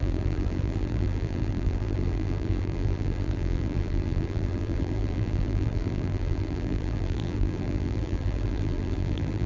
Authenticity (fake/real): fake